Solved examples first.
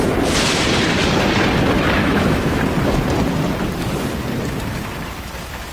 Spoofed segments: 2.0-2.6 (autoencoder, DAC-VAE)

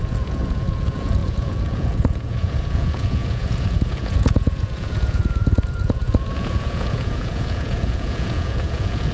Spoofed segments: 0.0-9.1 (vocoder, Vocos)

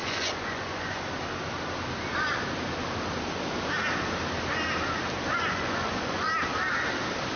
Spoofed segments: 0.0-1.0 (vocoder, Vocos); 5.3-6.3